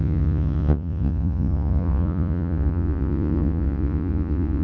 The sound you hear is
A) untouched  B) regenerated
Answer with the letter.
B